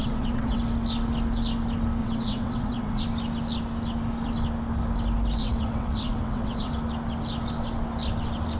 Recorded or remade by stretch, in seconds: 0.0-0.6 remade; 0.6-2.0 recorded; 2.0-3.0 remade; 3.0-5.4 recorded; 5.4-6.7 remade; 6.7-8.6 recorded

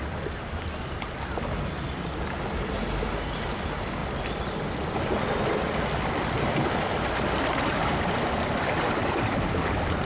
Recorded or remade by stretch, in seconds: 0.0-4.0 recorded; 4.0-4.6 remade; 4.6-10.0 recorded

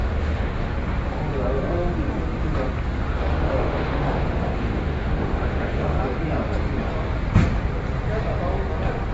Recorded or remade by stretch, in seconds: 0.0-0.7 remade; 0.7-2.9 recorded; 2.9-6.0 remade; 6.0-9.1 recorded

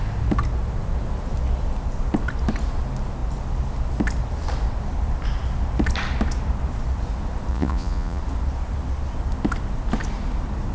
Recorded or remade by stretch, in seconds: 0.0-7.5 recorded; 7.5-8.2 remade; 8.2-10.7 recorded

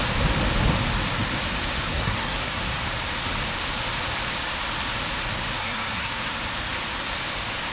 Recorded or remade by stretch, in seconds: 0.0-1.9 recorded; 1.9-2.6 remade; 2.6-5.6 recorded; 5.6-6.4 remade; 6.4-7.7 recorded

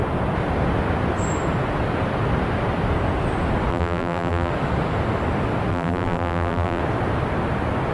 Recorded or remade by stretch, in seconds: 0.0-3.7 recorded; 3.7-4.5 remade; 4.5-5.7 recorded; 5.7-6.8 remade; 6.8-7.9 recorded